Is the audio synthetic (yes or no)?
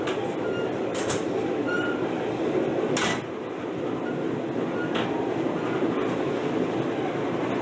no